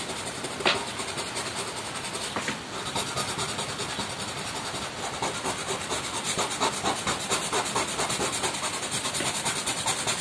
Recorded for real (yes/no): yes